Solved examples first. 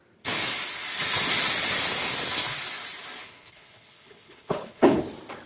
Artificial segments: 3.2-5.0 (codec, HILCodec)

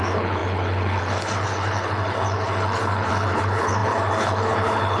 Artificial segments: 0.0-5.0 (codec, HILCodec)

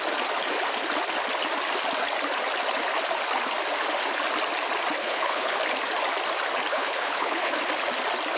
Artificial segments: 5.0-5.6 (codec, HILCodec); 6.7-7.6

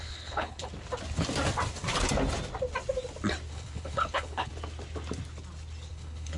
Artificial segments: 0.0-0.7 (codec, HILCodec); 3.5-4.5; 5.9-6.4

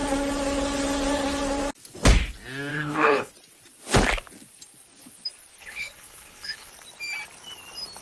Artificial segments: 2.7-3.3 (codec, HILCodec); 5.6-6.7

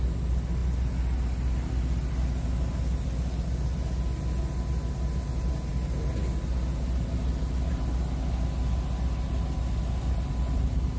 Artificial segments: none

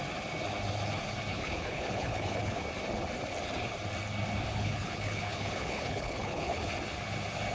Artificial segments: 1.3-2.6 (codec, HILCodec); 4.5-6.7

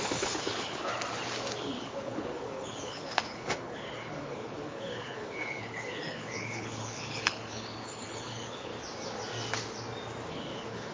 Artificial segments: 0.0-0.9 (codec, HILCodec); 1.6-8.7; 10.3-10.9